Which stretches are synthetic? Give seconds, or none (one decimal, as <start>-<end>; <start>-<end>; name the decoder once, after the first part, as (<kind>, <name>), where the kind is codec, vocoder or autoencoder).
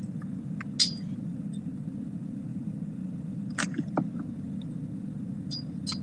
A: none